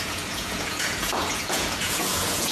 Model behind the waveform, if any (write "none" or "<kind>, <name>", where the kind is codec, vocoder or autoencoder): vocoder, Vocos